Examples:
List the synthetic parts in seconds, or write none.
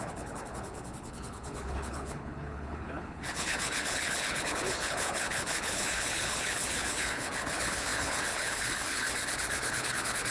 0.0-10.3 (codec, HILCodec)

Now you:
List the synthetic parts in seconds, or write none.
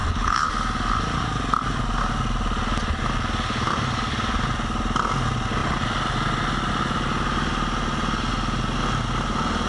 0.0-0.5 (codec, HILCodec)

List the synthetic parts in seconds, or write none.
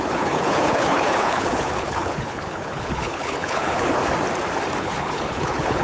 0.0-4.0 (codec, HILCodec); 4.8-5.8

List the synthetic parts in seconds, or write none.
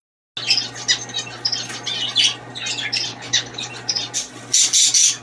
3.1-3.7 (codec, HILCodec)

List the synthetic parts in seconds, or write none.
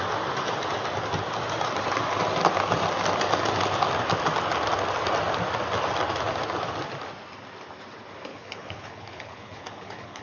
8.3-10.2 (codec, HILCodec)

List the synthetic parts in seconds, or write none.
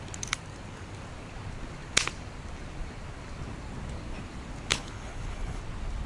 4.7-5.6 (codec, HILCodec)